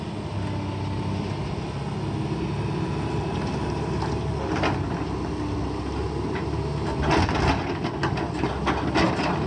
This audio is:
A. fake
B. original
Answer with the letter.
B